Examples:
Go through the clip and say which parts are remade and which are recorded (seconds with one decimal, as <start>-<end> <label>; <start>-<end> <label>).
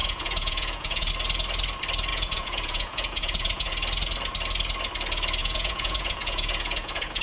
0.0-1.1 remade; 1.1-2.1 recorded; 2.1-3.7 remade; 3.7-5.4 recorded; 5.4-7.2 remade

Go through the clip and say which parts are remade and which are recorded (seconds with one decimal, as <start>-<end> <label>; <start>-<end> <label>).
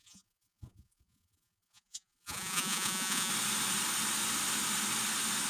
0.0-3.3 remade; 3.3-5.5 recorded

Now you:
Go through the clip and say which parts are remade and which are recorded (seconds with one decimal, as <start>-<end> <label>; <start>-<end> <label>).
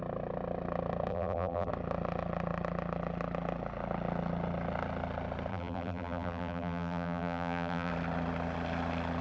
0.0-1.1 recorded; 1.1-1.7 remade; 1.7-5.5 recorded; 5.5-7.9 remade; 7.9-9.2 recorded